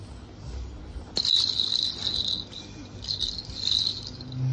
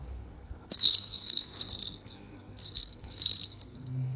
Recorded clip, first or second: first